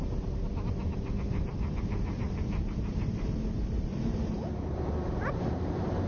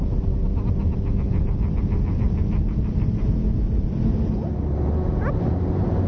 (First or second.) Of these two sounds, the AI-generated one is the first